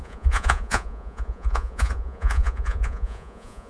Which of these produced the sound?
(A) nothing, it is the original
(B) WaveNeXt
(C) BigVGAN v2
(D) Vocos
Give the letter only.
D